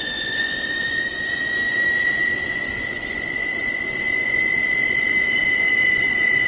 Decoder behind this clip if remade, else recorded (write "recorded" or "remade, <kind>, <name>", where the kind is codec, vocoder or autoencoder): remade, vocoder, Vocos